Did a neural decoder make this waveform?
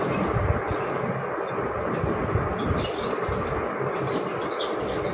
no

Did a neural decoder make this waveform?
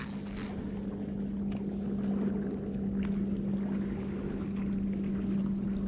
no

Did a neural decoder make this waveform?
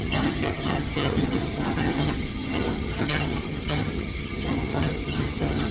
yes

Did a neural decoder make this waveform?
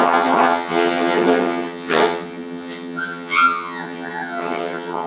yes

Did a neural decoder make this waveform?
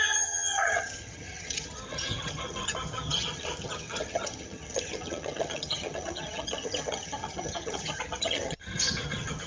yes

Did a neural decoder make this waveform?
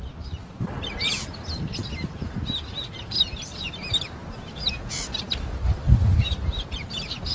no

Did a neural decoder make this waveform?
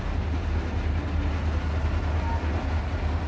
no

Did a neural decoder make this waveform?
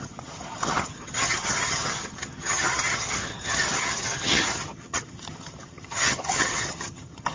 yes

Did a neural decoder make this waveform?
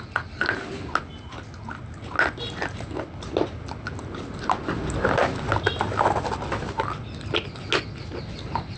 no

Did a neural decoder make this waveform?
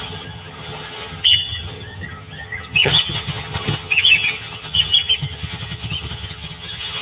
yes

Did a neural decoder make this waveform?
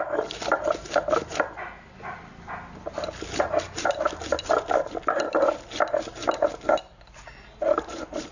no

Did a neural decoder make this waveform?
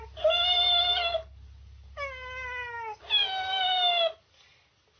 no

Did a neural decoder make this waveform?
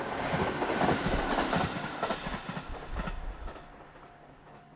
no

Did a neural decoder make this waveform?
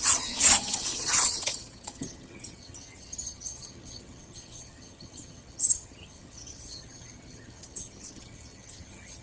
yes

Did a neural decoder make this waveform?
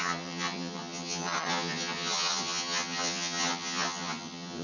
yes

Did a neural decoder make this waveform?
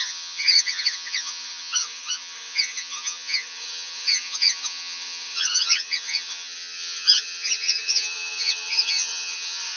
yes